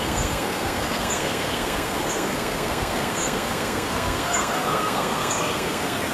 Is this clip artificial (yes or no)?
yes